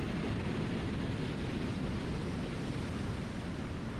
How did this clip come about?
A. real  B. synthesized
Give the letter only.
A